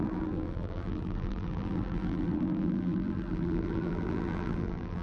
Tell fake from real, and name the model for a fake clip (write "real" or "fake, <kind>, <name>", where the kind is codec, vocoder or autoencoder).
fake, vocoder, BigVGAN v2